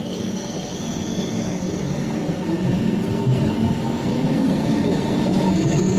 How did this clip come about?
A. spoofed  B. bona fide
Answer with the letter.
A